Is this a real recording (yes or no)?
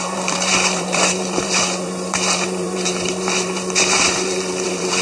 no